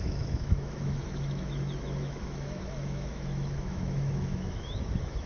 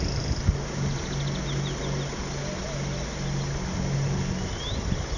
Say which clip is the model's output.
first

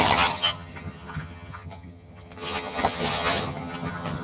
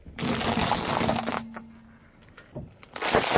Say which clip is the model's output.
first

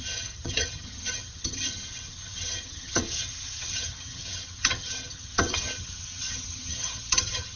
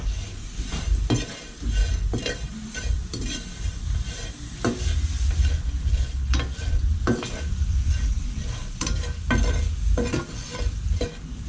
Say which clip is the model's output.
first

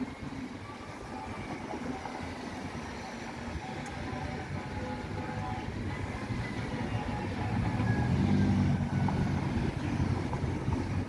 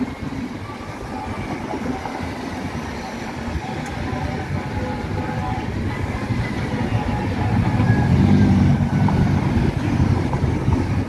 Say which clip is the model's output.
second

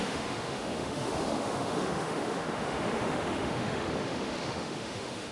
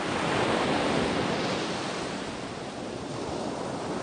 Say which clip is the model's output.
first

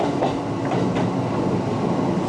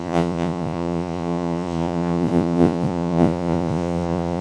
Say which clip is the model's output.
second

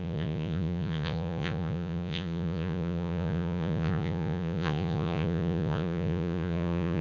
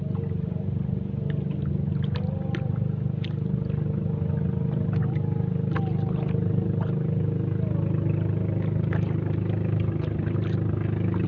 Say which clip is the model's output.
first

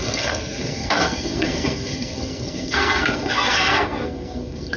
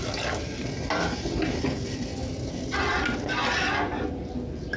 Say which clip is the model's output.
first